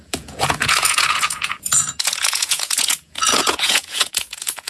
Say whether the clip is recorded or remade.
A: remade